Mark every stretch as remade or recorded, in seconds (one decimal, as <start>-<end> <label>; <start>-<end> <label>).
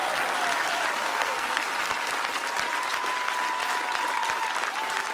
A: 0.0-1.0 recorded; 1.0-1.7 remade; 1.7-5.1 recorded